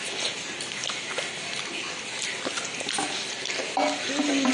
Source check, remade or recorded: recorded